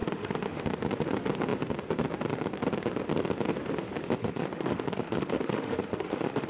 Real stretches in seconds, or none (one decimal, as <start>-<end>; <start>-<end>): 0.6-4.2